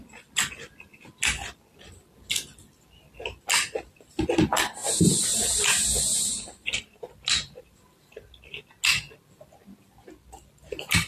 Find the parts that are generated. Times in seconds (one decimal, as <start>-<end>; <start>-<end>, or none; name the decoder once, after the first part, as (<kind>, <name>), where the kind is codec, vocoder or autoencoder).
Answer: 4.8-8.3 (vocoder, BigVGAN v2)